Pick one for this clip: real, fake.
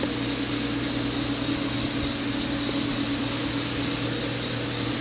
real